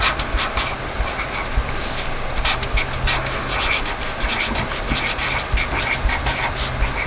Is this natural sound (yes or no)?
yes